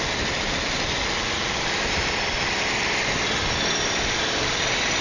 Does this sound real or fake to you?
real